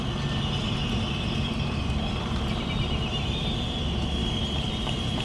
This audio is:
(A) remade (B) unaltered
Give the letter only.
B